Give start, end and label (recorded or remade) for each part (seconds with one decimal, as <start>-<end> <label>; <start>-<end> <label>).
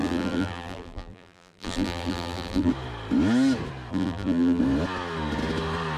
0.0-2.7 remade; 2.7-3.9 recorded; 3.9-4.6 remade; 4.6-6.0 recorded